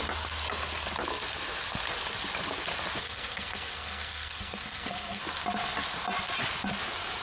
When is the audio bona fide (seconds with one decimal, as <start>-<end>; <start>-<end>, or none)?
0.0-3.0; 5.2-7.2